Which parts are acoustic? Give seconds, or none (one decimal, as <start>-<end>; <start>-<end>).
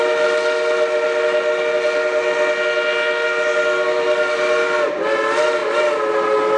0.0-6.6